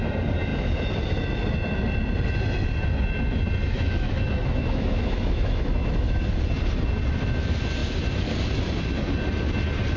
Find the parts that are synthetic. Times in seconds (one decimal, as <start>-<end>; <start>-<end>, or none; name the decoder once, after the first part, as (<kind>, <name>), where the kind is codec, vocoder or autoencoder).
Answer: 3.7-6.2 (autoencoder, DAC-VAE)